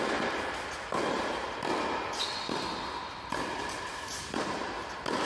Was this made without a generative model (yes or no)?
yes